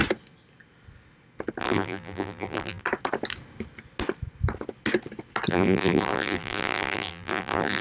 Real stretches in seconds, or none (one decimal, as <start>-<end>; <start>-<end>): 0.0-1.6; 2.8-5.5

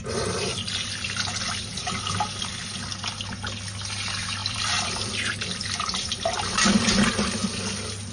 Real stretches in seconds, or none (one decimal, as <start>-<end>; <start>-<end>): 0.0-4.4; 7.1-8.1